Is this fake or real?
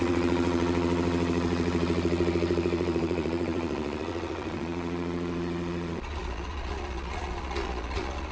fake